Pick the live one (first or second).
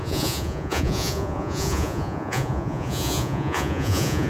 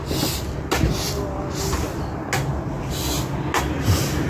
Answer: second